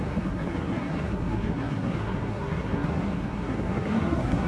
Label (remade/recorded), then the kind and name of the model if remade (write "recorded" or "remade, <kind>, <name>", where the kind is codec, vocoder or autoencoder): remade, codec, SNAC